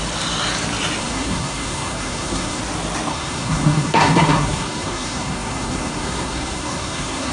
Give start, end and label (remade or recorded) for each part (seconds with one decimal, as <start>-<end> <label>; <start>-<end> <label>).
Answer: 0.0-1.0 recorded; 1.0-2.6 remade; 2.6-3.1 recorded; 3.1-7.3 remade